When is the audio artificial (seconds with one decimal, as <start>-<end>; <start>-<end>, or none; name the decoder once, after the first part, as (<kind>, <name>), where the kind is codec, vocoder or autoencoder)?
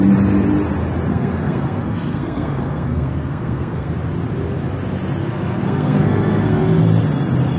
1.1-3.9 (codec, SNAC); 5.2-6.8